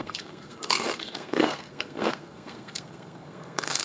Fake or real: fake